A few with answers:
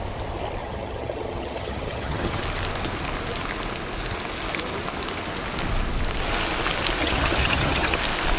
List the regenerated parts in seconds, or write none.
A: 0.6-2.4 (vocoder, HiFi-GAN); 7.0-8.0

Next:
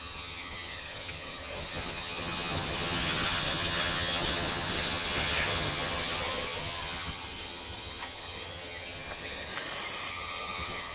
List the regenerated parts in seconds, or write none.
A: 0.0-9.5 (vocoder, HiFi-GAN); 10.1-10.9